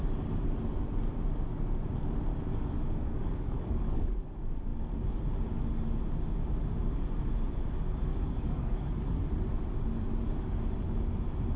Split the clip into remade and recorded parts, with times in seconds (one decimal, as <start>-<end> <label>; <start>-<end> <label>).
0.0-3.0 recorded; 3.0-4.3 remade; 4.3-8.1 recorded; 8.1-9.2 remade; 9.2-11.6 recorded